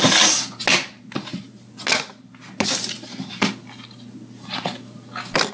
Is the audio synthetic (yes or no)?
no